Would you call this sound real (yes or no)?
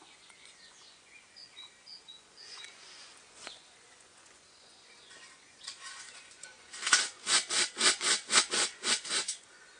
no